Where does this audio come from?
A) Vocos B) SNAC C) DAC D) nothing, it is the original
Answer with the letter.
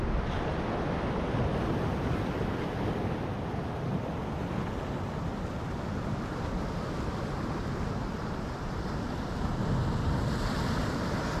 D